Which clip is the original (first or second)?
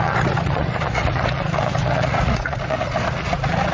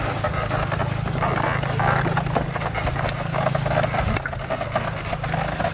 second